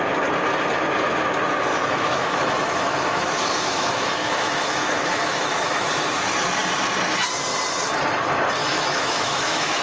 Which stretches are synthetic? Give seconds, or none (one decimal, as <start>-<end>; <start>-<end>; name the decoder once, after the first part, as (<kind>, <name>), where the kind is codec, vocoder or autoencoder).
1.7-5.9 (autoencoder, DAC-VAE); 8.6-9.8